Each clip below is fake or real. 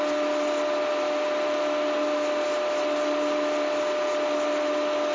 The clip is real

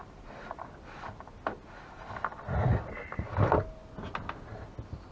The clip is real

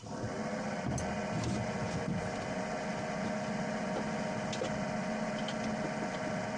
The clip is real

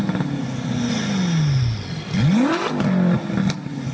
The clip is real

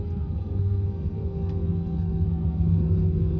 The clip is fake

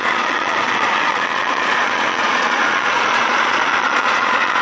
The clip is fake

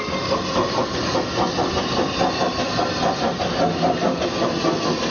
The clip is real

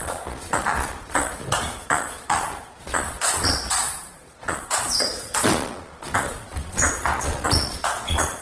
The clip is fake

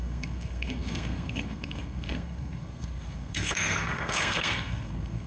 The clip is fake